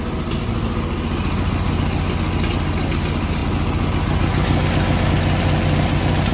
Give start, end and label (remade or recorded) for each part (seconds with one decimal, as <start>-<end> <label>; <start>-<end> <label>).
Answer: 0.0-6.3 recorded